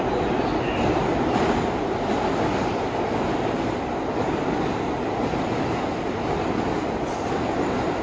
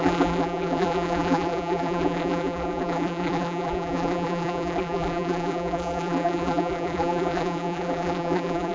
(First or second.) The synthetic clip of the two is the second